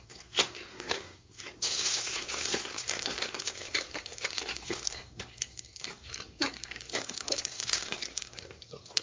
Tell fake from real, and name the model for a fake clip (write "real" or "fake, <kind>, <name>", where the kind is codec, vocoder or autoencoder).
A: fake, codec, SNAC